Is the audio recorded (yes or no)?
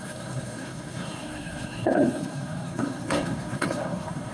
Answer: no